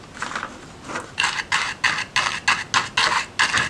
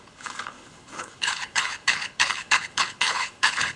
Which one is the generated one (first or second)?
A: second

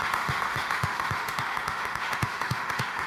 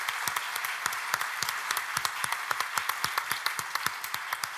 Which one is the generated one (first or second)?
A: first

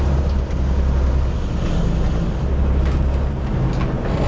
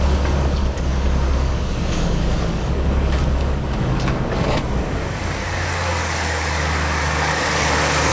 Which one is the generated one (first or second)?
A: second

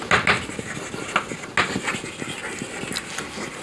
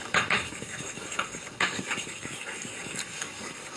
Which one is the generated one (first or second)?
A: second